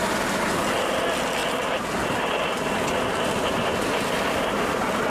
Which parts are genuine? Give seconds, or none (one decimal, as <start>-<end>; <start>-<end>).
0.0-5.1